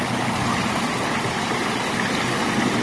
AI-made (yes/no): no